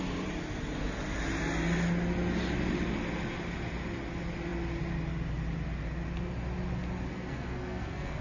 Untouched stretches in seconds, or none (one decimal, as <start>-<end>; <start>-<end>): 0.0-7.1